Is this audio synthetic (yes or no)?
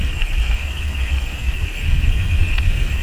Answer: yes